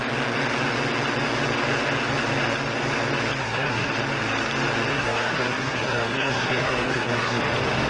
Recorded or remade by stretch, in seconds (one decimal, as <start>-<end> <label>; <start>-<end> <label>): 0.0-3.4 recorded; 3.4-3.9 remade; 3.9-4.9 recorded; 4.9-7.4 remade; 7.4-7.9 recorded

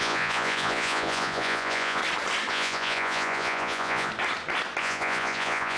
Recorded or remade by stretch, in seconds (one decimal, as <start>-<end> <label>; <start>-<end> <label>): 0.0-2.0 remade; 2.0-2.5 recorded; 2.5-4.1 remade; 4.1-4.8 recorded; 4.8-5.8 remade

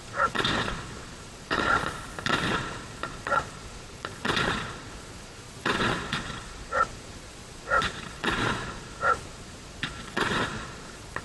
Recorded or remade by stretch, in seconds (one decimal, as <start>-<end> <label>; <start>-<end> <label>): 0.0-1.8 remade; 1.8-2.5 recorded; 2.5-11.2 remade

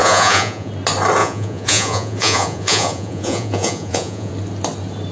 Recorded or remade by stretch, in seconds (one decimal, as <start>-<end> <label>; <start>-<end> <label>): 0.0-0.7 remade; 0.7-1.2 recorded; 1.2-4.3 remade; 4.3-5.1 recorded

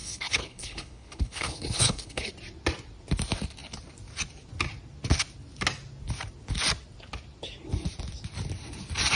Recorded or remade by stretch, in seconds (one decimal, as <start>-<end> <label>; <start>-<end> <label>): 0.0-2.3 remade; 2.3-9.2 recorded

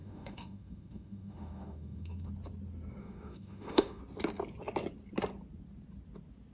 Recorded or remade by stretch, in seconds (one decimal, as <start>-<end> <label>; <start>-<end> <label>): 0.0-2.3 remade; 2.3-3.0 recorded; 3.0-4.0 remade; 4.0-6.5 recorded